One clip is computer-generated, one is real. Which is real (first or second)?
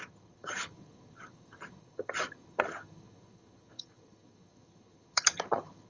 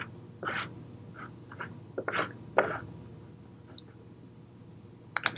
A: second